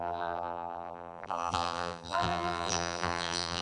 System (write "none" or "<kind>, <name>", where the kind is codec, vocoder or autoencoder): vocoder, BigVGAN v2